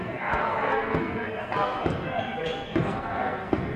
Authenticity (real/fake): fake